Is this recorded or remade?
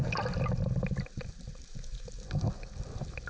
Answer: recorded